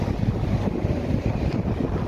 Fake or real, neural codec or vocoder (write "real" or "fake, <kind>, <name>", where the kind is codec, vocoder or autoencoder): real